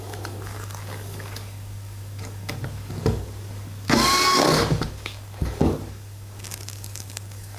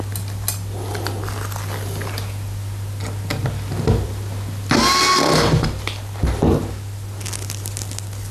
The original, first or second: second